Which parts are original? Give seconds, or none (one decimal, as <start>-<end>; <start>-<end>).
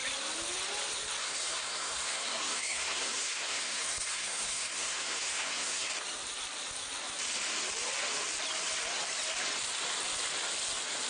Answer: 0.0-1.2; 5.9-11.1